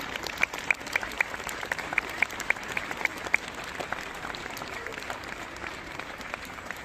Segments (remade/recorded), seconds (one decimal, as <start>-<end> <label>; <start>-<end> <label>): 0.0-3.1 remade; 3.1-4.2 recorded; 4.2-4.9 remade; 4.9-5.8 recorded; 5.8-6.8 remade